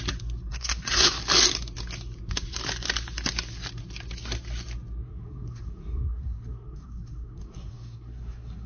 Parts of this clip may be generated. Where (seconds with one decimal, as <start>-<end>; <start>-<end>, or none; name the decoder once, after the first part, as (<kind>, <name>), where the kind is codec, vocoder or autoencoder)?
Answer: 0.5-1.2 (codec, SNAC); 5.0-8.7